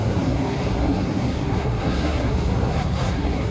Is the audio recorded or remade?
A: remade